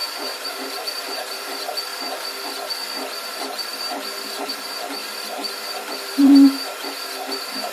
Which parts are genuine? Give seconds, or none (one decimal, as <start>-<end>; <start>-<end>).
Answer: 1.9-3.1; 3.7-4.4; 5.0-6.1